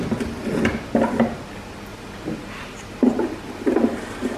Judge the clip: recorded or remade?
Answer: recorded